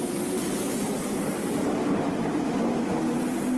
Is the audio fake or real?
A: real